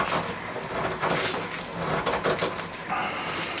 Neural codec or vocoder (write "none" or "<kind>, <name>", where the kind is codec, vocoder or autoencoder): none